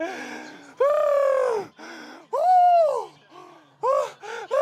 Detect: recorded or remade recorded